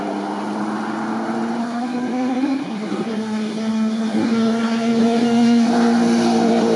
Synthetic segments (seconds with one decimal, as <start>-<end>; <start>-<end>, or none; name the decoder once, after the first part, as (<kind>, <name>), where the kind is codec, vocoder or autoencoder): 1.6-5.7 (codec, SNAC)